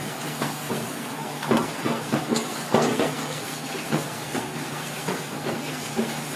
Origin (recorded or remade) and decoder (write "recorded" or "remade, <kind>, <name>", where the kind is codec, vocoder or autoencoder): remade, codec, SNAC